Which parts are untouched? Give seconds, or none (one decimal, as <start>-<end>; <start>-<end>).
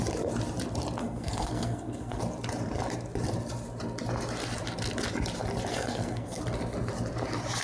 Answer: 0.0-1.0; 2.2-5.7; 6.4-7.6